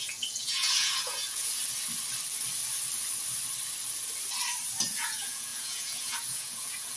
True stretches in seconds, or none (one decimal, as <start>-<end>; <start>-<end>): 1.6-4.9